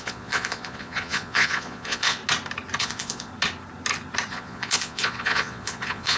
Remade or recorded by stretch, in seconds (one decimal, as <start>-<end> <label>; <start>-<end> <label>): 0.0-2.2 remade; 2.2-2.8 recorded; 2.8-3.3 remade; 3.3-4.3 recorded; 4.3-6.2 remade